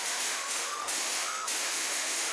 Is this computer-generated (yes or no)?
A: yes